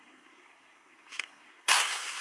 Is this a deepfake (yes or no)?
yes